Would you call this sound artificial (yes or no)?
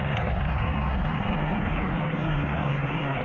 yes